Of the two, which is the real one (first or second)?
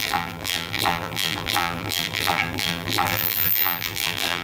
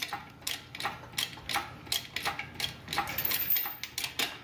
second